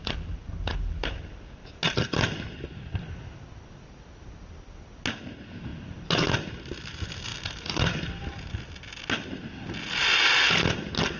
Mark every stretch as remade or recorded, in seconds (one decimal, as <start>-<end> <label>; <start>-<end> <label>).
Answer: 0.0-11.2 recorded